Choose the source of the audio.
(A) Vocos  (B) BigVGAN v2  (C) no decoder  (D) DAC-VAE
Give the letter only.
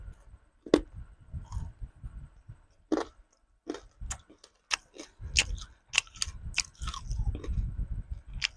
C